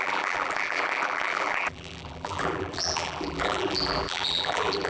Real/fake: fake